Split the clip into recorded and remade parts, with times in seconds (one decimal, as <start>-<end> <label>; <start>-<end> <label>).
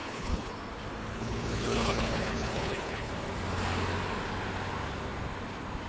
0.0-0.5 remade; 0.5-1.1 recorded; 1.1-3.1 remade; 3.1-5.9 recorded